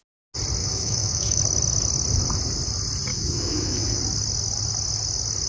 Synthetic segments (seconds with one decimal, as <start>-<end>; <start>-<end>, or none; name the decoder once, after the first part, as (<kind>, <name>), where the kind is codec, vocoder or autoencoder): 0.6-1.4 (autoencoder, DAC-VAE); 3.1-4.0